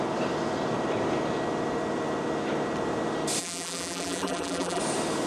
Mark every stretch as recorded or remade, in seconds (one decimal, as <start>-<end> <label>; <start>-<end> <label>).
0.0-3.4 recorded; 3.4-4.8 remade; 4.8-5.3 recorded